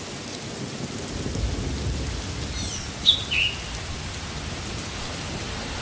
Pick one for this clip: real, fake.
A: real